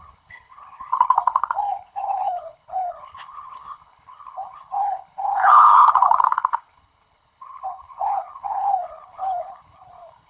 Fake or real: fake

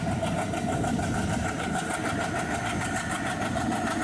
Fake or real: real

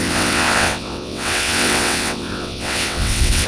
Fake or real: fake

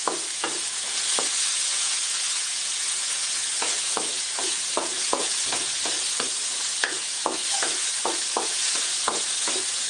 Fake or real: fake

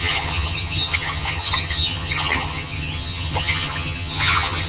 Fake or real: fake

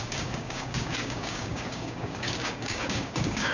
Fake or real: fake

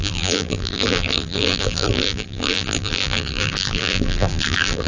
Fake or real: fake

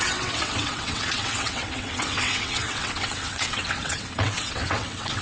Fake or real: fake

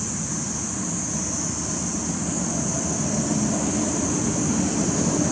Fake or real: real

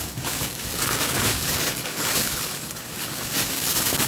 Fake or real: fake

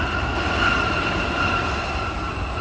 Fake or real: real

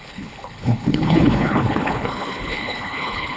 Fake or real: fake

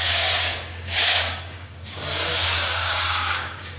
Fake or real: fake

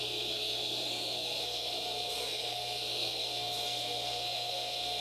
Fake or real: fake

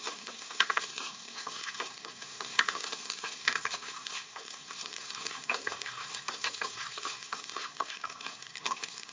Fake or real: fake